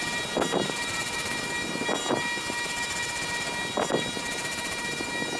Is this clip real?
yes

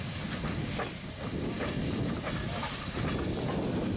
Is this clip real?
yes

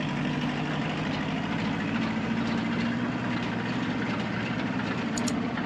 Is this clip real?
no